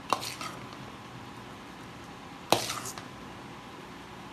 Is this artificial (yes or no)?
no